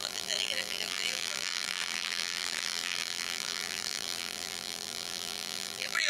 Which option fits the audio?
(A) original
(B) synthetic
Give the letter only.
B